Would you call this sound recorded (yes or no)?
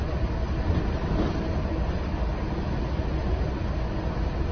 yes